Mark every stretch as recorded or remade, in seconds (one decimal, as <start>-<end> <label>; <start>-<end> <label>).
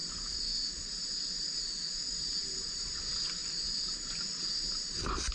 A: 0.0-5.3 recorded